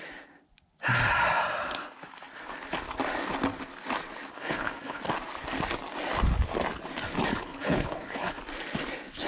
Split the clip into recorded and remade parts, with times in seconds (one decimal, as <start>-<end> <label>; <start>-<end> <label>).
0.0-4.3 recorded; 4.3-5.0 remade; 5.0-7.3 recorded; 7.3-8.4 remade; 8.4-9.3 recorded